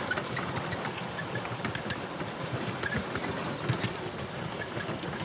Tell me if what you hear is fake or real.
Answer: real